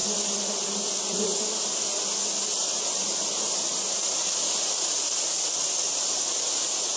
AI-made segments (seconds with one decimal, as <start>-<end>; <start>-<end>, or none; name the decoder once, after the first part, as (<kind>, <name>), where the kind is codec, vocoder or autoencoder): none